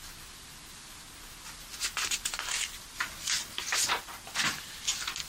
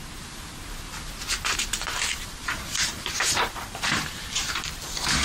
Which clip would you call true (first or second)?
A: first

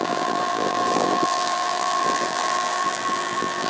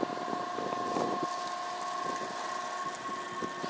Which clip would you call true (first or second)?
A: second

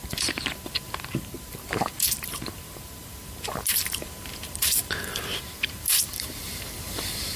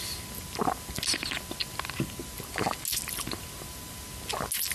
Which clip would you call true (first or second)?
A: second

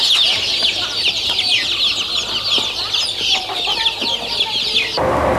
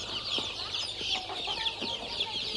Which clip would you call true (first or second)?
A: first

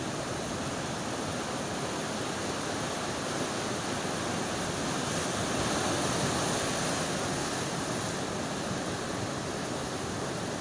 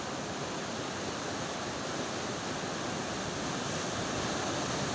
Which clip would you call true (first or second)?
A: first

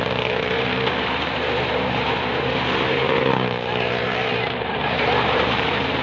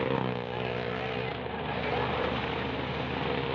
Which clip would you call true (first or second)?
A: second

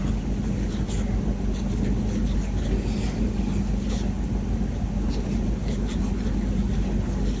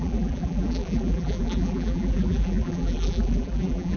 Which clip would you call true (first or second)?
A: first